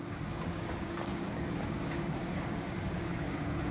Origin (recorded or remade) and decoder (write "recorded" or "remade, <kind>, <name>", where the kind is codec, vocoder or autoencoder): remade, codec, DAC